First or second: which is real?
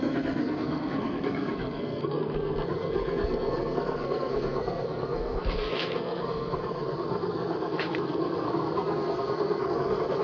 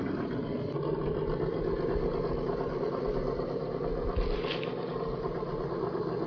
second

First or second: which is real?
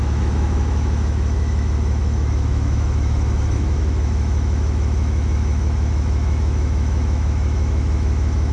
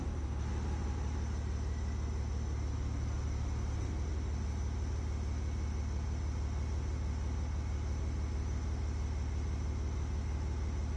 second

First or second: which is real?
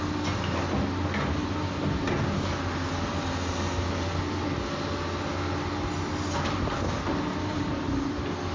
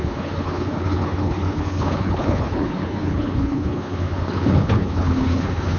first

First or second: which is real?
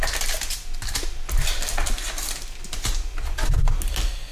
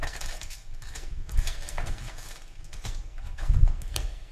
first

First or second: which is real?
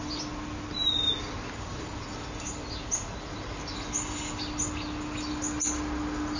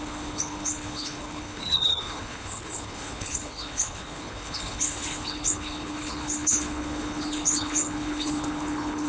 first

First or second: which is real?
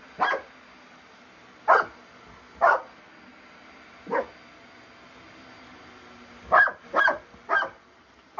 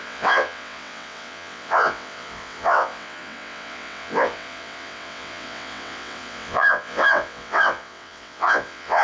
first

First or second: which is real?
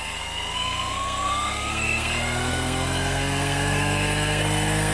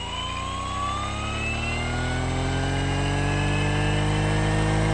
second